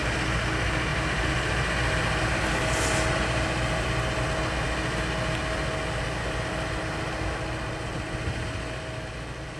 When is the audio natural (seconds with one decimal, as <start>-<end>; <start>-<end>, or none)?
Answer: 0.0-9.6